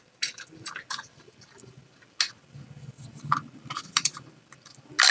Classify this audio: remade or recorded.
recorded